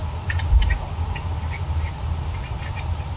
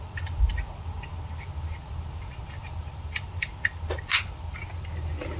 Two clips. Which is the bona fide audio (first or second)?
first